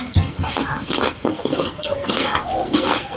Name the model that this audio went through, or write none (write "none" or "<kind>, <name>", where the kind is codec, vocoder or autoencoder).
codec, SNAC